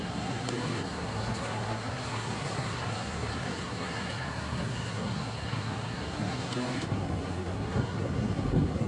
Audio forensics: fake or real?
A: fake